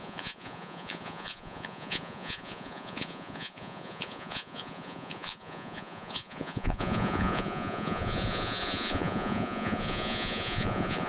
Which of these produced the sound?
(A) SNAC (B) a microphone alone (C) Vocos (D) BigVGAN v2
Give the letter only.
C